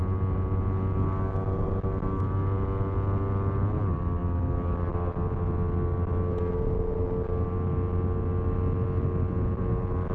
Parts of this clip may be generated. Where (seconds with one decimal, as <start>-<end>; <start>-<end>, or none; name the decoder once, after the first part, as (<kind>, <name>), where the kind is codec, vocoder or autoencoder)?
none